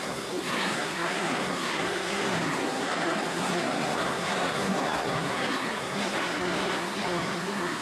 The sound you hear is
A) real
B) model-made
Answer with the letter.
B